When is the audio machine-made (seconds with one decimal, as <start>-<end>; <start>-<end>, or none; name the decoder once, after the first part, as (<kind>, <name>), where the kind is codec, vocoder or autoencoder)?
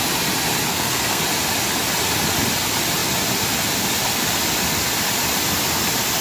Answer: 0.7-1.2 (codec, SNAC)